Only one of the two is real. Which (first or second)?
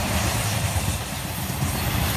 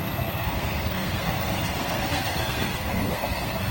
first